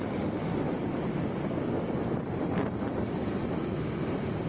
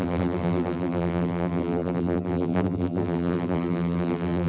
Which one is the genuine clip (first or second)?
first